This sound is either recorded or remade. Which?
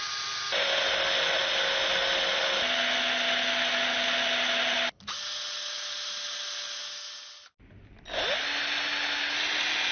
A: recorded